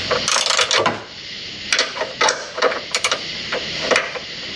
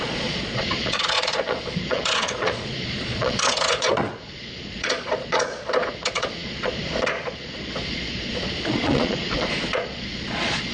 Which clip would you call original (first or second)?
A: first